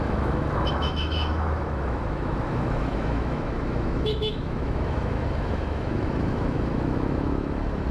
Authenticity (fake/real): fake